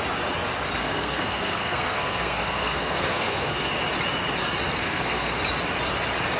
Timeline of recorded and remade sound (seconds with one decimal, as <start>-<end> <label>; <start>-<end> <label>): 0.0-0.8 recorded; 0.8-3.7 remade; 3.7-4.8 recorded; 4.8-5.4 remade; 5.4-6.4 recorded